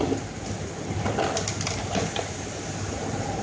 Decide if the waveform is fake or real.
real